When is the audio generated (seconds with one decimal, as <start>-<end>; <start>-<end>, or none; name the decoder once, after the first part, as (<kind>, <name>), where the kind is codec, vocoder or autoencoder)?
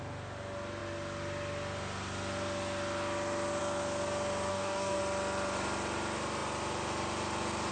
4.5-5.0 (codec, DAC)